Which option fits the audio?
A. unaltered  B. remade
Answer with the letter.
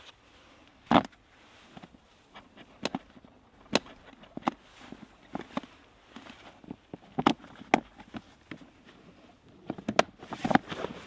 A